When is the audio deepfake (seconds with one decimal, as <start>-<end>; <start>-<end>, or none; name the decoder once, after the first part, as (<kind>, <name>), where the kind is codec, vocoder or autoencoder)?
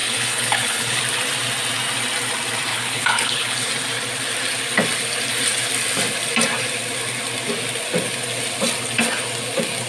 0.0-1.0 (codec, HILCodec); 2.7-3.7